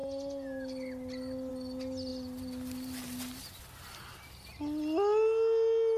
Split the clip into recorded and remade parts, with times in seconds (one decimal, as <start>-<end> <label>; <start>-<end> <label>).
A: 0.0-6.0 recorded